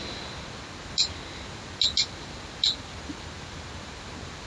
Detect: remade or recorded recorded